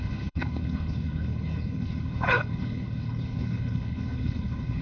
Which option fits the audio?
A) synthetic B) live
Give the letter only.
A